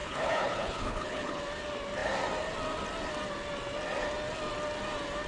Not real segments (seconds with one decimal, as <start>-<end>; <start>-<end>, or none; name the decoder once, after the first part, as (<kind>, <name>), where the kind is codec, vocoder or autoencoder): 0.0-1.4 (codec, HILCodec)